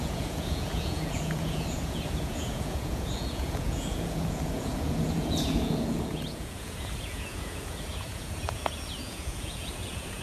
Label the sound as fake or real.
fake